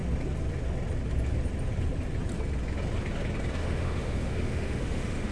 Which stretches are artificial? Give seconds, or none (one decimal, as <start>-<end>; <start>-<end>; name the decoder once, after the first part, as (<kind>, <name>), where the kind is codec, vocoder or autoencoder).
3.6-5.3 (autoencoder, DAC-VAE)